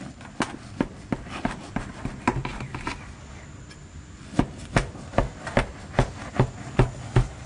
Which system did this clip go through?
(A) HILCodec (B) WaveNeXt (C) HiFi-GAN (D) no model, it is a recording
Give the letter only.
D